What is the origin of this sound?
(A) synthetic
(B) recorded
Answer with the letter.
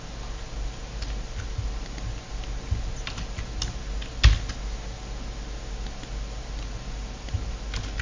B